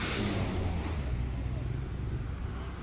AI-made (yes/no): no